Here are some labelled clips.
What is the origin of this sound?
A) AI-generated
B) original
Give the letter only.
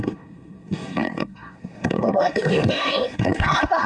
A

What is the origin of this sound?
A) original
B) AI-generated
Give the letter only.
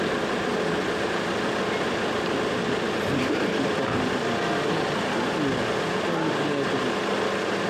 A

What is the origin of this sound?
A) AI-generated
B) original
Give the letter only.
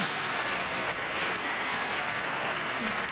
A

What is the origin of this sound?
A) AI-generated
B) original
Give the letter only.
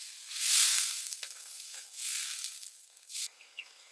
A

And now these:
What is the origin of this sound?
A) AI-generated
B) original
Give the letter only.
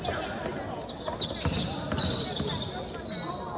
B